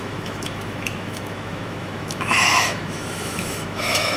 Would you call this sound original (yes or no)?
no